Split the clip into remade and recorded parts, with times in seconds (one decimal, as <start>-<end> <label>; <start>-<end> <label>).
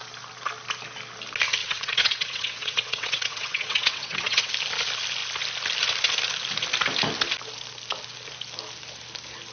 0.0-1.6 recorded; 1.6-4.5 remade; 4.5-9.5 recorded